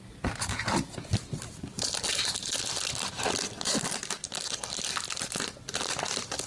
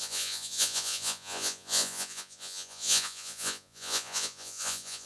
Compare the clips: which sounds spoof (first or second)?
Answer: second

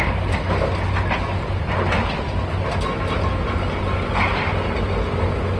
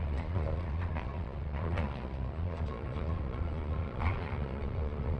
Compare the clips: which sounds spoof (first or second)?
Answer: second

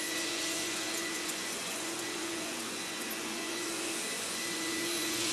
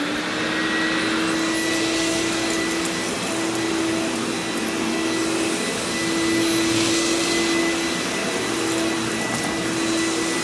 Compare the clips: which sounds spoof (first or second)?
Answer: first